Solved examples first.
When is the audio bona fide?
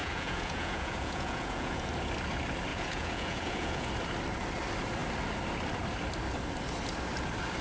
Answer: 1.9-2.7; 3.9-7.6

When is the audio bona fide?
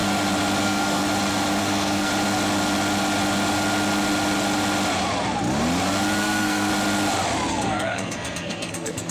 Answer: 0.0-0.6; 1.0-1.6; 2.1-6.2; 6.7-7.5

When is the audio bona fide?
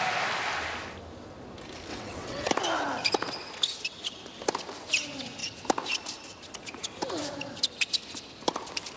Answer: 0.0-1.9; 2.5-9.0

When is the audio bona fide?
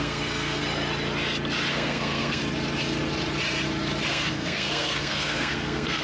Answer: 0.6-1.7; 2.4-4.1